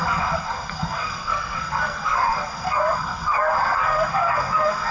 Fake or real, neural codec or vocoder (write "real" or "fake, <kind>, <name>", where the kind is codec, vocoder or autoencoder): fake, codec, SNAC